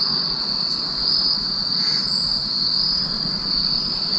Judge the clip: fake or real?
real